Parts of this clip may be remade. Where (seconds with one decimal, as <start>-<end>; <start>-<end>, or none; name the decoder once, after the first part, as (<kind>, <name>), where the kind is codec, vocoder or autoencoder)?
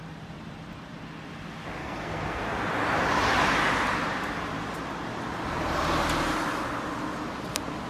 1.8-2.4 (codec, SNAC)